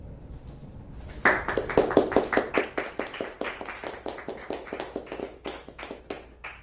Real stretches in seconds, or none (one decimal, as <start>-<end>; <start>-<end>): 0.0-5.2; 6.0-6.6